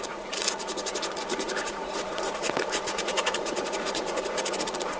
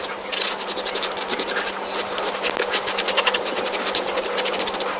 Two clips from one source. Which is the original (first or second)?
second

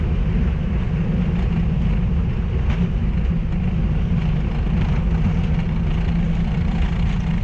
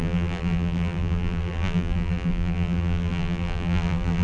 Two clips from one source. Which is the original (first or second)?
first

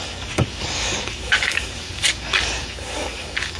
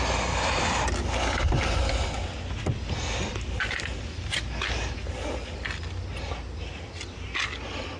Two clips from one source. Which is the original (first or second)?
second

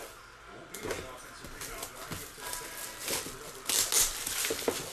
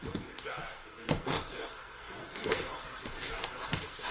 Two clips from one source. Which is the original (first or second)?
first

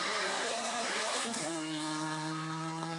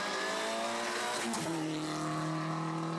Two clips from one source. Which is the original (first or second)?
second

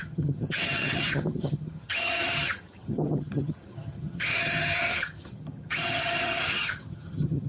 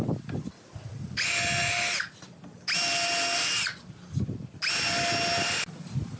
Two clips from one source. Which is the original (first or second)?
second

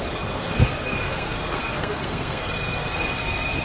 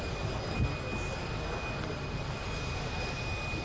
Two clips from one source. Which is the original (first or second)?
second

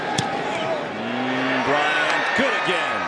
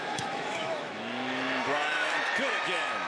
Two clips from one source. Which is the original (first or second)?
first